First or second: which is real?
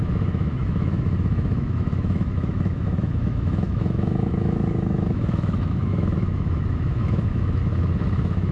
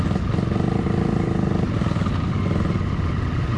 second